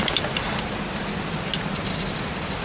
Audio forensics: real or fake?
real